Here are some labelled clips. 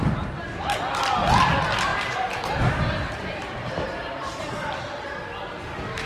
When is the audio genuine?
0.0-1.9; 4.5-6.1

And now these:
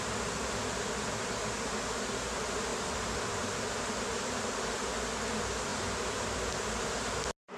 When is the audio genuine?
0.0-2.7; 5.0-5.7; 6.5-7.6

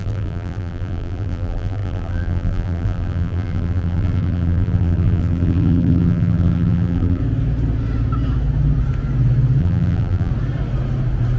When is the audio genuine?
7.2-9.6; 10.3-11.4

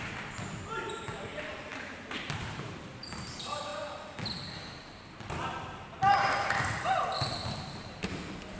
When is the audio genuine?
3.7-7.6

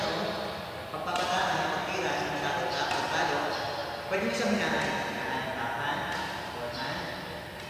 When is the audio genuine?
0.0-7.7

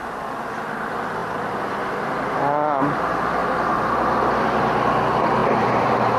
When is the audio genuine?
0.0-5.4

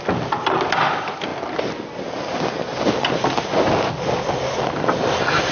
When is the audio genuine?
0.0-5.5

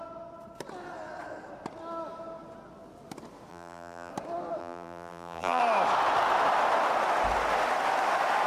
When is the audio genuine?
0.0-3.5; 4.1-4.6; 5.6-8.5